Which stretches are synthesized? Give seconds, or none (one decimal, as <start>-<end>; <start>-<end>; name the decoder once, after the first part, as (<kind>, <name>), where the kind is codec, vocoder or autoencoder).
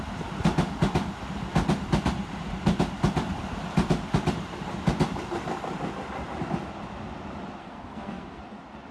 7.6-8.4 (codec, SNAC)